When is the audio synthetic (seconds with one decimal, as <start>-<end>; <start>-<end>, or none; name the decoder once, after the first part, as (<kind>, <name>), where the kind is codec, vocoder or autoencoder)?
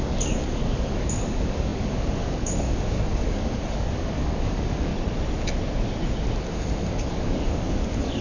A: 0.0-4.9 (codec, DAC); 6.4-8.2